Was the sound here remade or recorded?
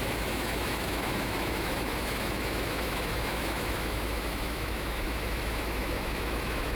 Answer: remade